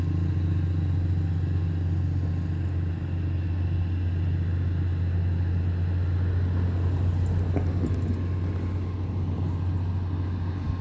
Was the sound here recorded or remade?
recorded